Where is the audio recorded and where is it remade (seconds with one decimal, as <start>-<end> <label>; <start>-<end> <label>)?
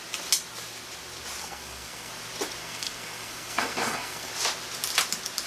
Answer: 0.0-1.4 recorded; 1.4-2.1 remade; 2.1-2.6 recorded; 2.6-4.3 remade; 4.3-5.5 recorded